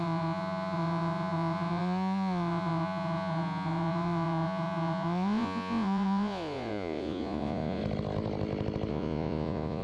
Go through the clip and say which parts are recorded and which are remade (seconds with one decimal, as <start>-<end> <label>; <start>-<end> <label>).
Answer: 0.0-7.8 remade; 7.8-8.9 recorded; 8.9-9.8 remade